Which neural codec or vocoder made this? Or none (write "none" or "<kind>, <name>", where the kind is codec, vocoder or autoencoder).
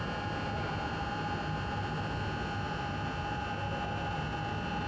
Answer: none